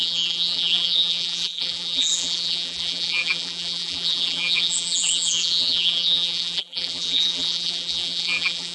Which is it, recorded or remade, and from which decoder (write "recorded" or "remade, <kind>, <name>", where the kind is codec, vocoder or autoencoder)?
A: remade, vocoder, BigVGAN v2